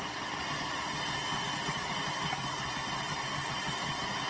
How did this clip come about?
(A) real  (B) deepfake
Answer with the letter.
A